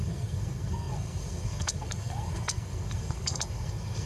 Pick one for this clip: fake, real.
fake